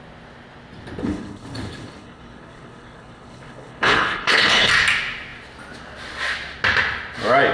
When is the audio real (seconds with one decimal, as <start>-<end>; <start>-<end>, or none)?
0.0-1.0; 4.7-7.5